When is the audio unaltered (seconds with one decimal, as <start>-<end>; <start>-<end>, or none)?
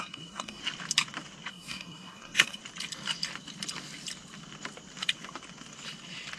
0.6-1.5; 2.6-6.4